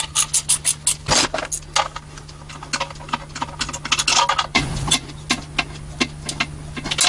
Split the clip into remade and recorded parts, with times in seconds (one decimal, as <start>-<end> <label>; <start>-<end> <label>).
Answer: 0.0-4.5 recorded; 4.5-5.1 remade; 5.1-7.1 recorded